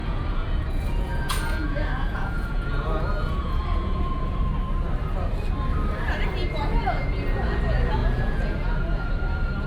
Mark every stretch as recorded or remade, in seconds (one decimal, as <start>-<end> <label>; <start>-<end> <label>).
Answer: 0.0-4.4 remade; 4.4-8.0 recorded; 8.0-9.1 remade; 9.1-9.7 recorded